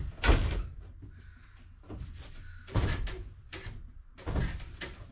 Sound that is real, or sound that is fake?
real